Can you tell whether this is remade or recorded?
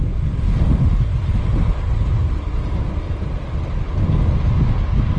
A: recorded